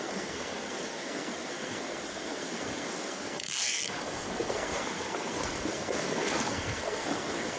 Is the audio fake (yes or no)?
yes